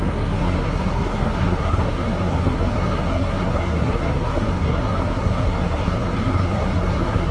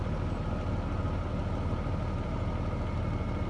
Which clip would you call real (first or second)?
second